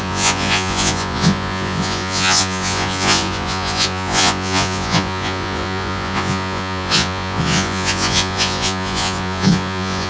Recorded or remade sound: remade